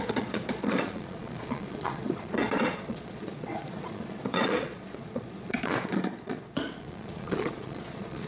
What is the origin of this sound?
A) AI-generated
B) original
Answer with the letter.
A